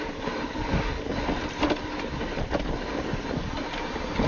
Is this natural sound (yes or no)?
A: yes